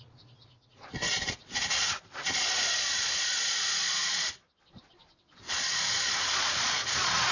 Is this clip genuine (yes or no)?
no